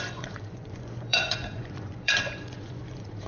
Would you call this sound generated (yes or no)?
yes